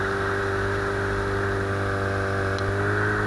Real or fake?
real